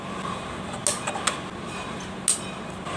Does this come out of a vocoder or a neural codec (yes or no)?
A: no